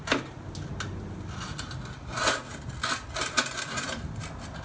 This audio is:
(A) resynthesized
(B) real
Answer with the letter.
B